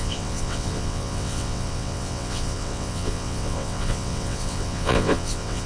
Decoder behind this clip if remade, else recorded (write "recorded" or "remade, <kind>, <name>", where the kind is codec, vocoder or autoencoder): remade, vocoder, WaveNeXt